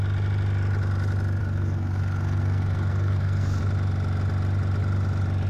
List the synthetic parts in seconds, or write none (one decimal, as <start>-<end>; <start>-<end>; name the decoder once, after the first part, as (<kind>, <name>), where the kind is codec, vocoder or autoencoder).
1.4-3.6 (codec, SNAC)